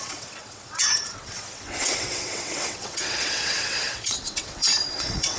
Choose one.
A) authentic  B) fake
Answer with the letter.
B